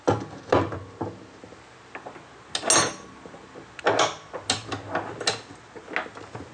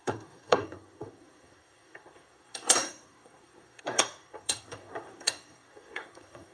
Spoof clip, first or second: second